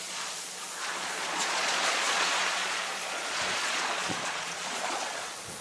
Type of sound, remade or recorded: remade